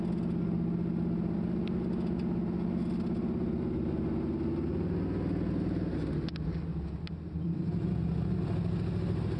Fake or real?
real